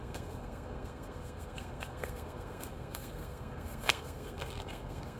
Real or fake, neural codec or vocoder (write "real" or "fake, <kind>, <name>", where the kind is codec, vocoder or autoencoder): fake, codec, SNAC